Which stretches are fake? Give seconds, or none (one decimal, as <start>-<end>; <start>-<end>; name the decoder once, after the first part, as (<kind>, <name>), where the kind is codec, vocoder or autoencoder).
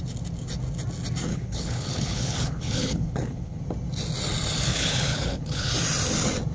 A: 1.3-3.6 (codec, HILCodec); 4.7-5.7